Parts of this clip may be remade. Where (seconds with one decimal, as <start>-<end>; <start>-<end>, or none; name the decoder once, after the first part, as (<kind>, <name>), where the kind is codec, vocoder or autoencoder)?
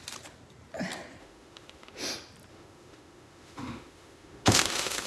1.2-2.0 (autoencoder, DAC-VAE); 2.5-5.1